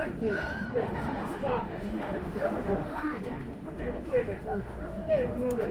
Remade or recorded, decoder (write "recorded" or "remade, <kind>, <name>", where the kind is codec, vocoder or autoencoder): remade, autoencoder, DAC-VAE